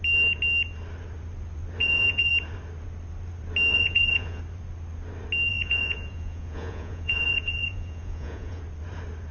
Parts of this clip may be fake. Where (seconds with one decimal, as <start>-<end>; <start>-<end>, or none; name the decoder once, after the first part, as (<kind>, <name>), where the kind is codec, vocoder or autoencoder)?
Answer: 1.8-2.3 (vocoder, Vocos); 3.7-4.4; 5.5-8.6